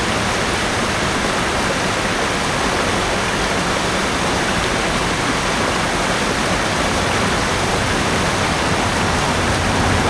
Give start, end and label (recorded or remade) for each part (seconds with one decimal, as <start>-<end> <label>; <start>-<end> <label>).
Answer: 0.0-4.0 recorded; 4.0-5.3 remade; 5.3-10.1 recorded